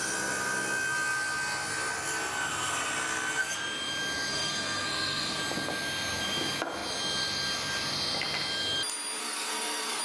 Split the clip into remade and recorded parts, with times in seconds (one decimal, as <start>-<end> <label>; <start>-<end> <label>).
0.0-4.3 recorded; 4.3-5.4 remade; 5.4-9.2 recorded; 9.2-10.0 remade